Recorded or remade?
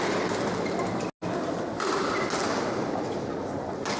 recorded